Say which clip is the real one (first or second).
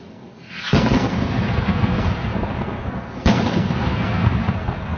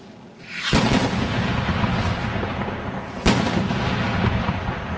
second